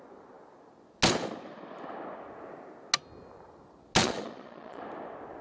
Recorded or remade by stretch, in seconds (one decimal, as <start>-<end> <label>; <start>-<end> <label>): 0.0-4.0 recorded; 4.0-4.8 remade; 4.8-5.4 recorded